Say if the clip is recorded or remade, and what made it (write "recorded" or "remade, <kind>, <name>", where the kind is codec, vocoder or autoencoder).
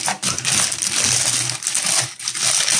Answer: recorded